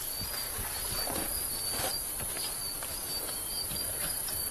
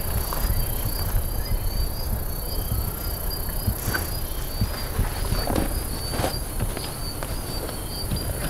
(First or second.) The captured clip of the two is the second